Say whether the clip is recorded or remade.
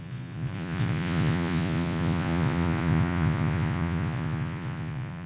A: remade